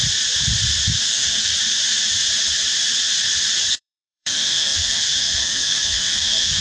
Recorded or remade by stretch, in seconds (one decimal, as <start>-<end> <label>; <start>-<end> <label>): 0.0-1.1 recorded; 1.1-1.5 remade; 1.5-3.7 recorded; 3.7-6.6 remade